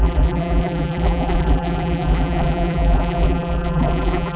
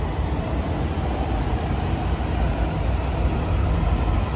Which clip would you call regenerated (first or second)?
first